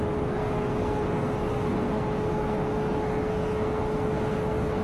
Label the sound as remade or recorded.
remade